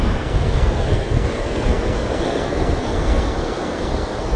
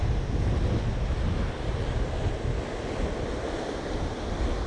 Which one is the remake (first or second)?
first